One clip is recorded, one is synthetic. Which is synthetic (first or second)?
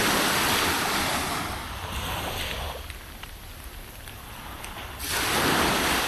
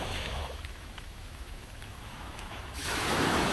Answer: second